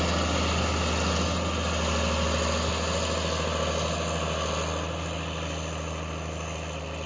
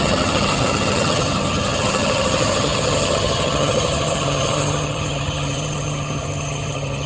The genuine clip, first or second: first